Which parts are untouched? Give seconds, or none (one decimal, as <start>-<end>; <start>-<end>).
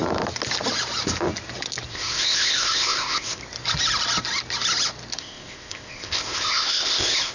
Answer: 0.0-1.9; 3.4-5.2